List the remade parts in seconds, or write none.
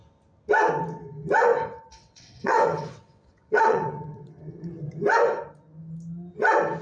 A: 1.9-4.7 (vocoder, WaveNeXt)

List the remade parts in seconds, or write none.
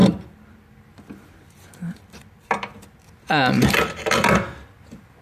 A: 0.0-3.1 (vocoder, BigVGAN v2)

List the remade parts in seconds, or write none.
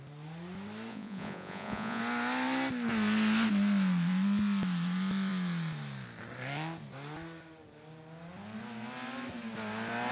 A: 0.9-2.0 (vocoder, Vocos)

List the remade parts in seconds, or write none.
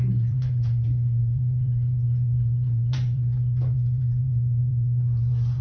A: 0.0-5.6 (vocoder, Vocos)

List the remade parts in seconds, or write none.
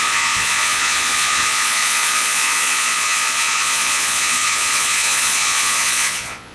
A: 0.0-6.5 (vocoder, Vocos)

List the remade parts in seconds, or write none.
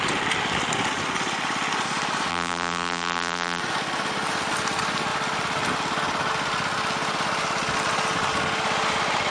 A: 2.3-3.6 (vocoder, BigVGAN v2)